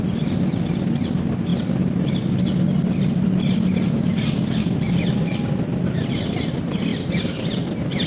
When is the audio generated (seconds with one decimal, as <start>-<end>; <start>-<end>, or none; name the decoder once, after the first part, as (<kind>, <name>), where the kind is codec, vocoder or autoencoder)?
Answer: 1.5-6.1 (vocoder, BigVGAN v2)